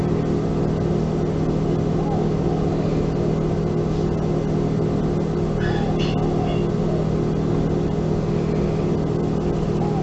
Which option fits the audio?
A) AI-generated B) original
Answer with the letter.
B